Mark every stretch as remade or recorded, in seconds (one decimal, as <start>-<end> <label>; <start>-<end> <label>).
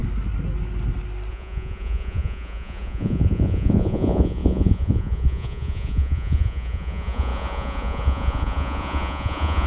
0.0-1.3 recorded; 1.3-9.7 remade